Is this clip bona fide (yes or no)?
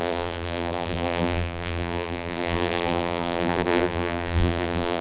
no